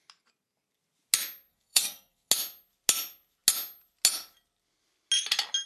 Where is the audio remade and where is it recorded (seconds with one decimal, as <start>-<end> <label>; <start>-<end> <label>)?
0.0-1.5 recorded; 1.5-2.3 remade; 2.3-5.7 recorded